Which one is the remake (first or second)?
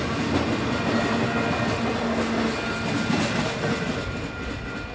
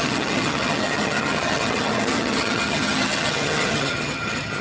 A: second